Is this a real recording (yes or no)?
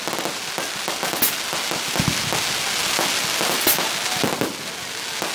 yes